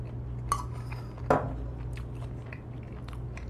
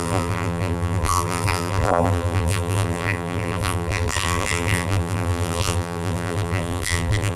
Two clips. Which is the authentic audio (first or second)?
first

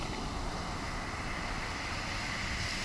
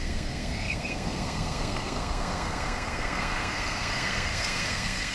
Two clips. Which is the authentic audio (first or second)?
first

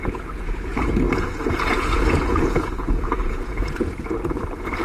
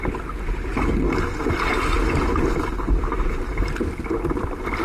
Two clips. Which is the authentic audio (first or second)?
second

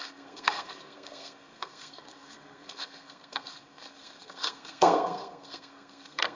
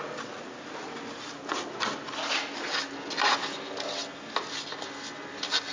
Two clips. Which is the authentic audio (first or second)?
second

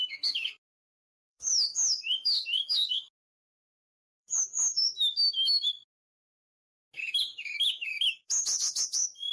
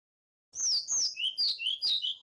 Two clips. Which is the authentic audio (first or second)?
second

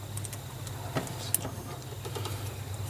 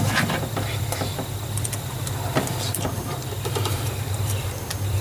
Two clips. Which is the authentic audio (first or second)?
first